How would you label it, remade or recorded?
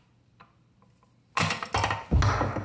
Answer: recorded